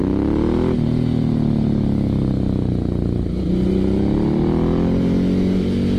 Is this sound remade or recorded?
recorded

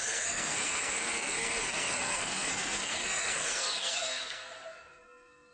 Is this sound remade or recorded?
remade